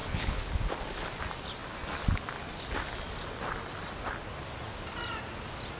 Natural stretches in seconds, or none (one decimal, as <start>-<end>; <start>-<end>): 0.5-5.8